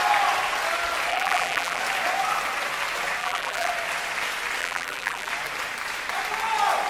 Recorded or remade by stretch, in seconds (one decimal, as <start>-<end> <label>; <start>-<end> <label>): 0.0-1.1 recorded; 1.1-1.8 remade; 1.8-3.2 recorded; 3.2-3.7 remade; 3.7-4.6 recorded; 4.6-5.3 remade; 5.3-6.9 recorded